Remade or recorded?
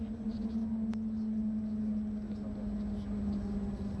recorded